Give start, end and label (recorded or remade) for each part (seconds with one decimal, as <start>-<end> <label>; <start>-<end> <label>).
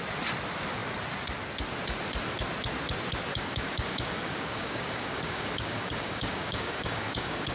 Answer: 0.0-3.3 recorded; 3.3-7.5 remade